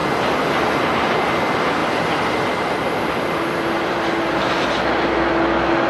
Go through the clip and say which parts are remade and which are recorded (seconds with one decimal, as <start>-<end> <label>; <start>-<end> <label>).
0.0-5.9 recorded